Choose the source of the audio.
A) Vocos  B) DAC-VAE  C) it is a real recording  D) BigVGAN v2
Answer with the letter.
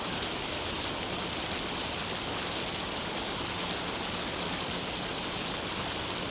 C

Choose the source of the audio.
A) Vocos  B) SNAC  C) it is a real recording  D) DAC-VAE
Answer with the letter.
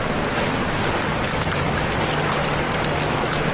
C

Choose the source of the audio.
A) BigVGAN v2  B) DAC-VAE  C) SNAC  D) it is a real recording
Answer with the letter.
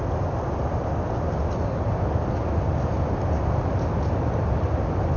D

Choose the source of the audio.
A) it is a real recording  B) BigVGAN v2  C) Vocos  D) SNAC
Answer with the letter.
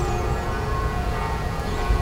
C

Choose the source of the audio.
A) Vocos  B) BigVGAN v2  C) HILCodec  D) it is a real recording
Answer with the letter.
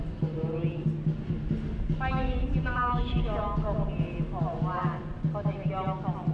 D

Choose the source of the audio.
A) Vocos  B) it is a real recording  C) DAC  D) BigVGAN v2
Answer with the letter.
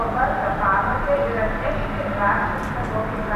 B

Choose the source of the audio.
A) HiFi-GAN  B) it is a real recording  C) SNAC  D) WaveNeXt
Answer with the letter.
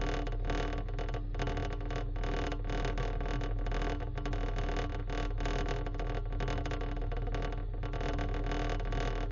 B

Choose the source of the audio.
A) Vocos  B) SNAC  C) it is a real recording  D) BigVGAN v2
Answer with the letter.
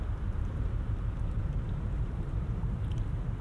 D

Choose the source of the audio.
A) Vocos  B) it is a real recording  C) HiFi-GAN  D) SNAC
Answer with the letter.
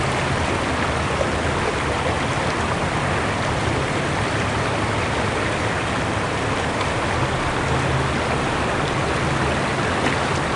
B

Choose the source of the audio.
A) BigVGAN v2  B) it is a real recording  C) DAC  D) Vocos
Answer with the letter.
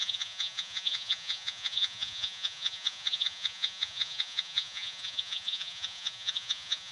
D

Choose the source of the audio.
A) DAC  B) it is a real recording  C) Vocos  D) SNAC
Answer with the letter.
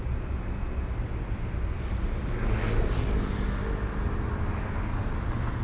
B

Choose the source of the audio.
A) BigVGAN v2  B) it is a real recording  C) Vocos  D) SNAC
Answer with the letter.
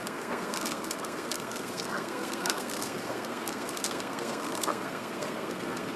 D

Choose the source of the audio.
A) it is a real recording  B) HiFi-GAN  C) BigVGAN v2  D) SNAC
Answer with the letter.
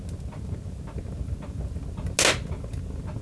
A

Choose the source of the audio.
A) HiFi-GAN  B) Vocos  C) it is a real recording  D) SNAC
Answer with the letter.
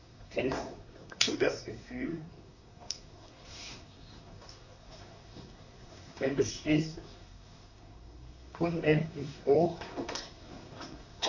D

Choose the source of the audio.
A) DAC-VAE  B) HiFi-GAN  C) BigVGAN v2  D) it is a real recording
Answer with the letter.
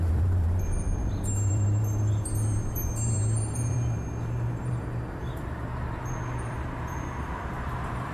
C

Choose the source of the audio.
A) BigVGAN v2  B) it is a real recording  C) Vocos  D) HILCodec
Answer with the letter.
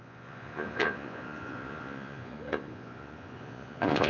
C